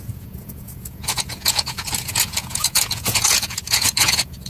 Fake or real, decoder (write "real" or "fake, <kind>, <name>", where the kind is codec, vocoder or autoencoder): fake, vocoder, Vocos